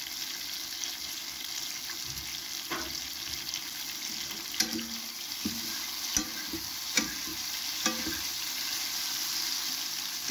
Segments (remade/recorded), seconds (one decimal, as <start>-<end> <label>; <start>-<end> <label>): 0.0-10.3 recorded